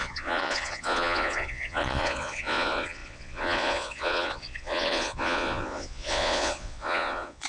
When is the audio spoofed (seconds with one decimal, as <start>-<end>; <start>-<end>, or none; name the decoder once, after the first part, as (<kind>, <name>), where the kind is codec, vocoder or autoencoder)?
0.0-7.5 (vocoder, Vocos)